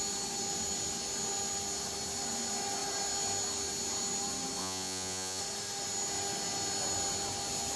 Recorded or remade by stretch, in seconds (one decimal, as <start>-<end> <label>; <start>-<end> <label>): 0.0-4.6 recorded; 4.6-5.4 remade; 5.4-7.8 recorded